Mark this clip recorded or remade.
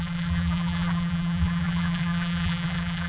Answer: remade